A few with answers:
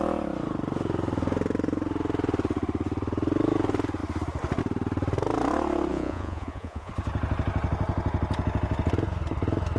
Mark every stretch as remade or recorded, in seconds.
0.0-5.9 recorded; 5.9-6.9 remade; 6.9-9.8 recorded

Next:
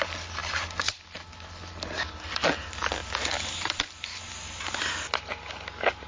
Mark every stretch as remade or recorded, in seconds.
0.0-6.1 recorded